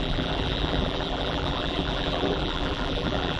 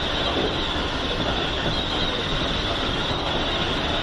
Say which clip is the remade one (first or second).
first